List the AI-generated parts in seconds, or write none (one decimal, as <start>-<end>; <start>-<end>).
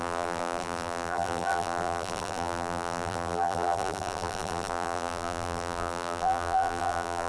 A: 0.0-7.3